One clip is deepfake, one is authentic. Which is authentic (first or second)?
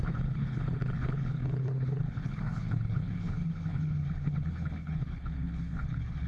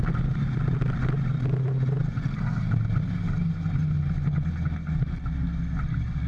second